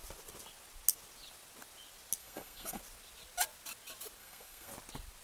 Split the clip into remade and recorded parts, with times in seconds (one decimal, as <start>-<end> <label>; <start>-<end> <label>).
0.0-2.2 recorded; 2.2-2.8 remade; 2.8-4.2 recorded; 4.2-4.7 remade; 4.7-5.2 recorded